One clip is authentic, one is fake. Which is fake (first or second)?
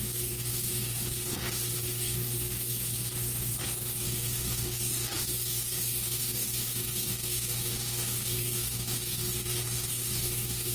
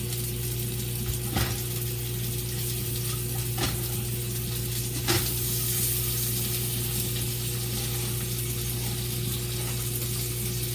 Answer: first